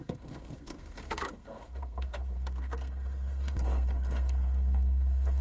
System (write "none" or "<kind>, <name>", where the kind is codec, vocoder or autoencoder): codec, SNAC